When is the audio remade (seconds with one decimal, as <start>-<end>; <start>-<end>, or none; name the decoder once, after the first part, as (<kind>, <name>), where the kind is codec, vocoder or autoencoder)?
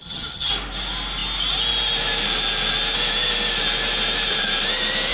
0.0-0.5 (vocoder, HiFi-GAN)